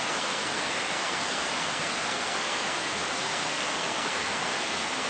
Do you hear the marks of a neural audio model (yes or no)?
yes